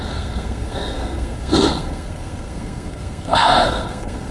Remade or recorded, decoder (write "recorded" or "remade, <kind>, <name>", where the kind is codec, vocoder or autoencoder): remade, codec, SNAC